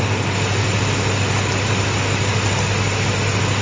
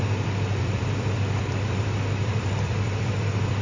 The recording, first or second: first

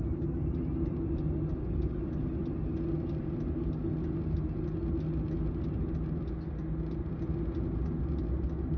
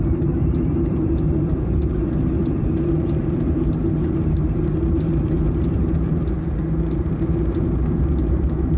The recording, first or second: first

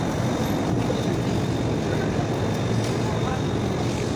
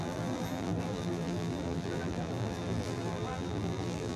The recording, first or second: first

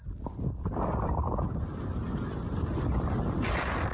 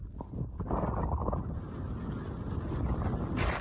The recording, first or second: second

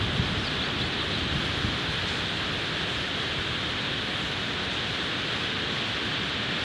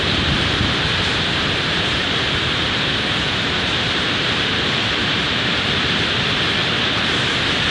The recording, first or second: first